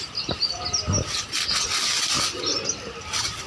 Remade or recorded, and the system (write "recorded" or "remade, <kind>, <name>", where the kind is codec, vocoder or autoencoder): recorded